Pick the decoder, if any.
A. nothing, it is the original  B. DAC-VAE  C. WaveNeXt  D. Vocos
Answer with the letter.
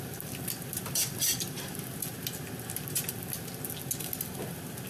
A